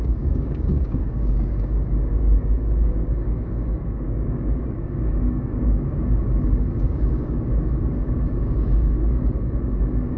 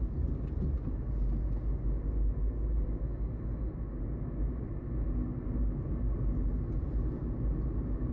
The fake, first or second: first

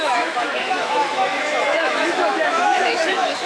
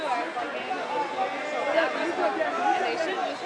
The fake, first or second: first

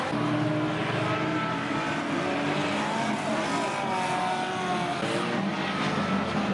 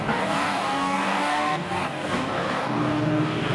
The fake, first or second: second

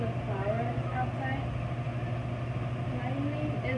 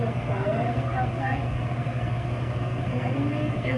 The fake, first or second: second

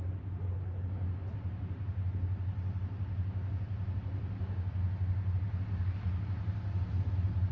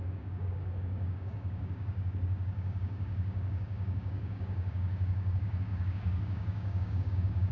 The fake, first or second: second